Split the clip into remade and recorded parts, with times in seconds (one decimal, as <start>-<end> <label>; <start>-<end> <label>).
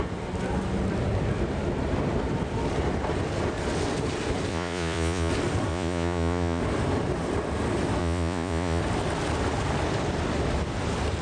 0.0-4.5 recorded; 4.5-5.3 remade; 5.3-5.7 recorded; 5.7-6.6 remade; 6.6-8.0 recorded; 8.0-8.8 remade; 8.8-11.2 recorded